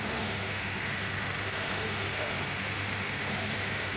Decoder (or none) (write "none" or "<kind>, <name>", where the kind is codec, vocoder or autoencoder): autoencoder, DAC-VAE